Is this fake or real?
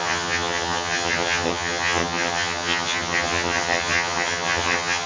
fake